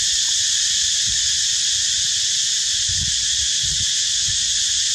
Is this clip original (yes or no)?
yes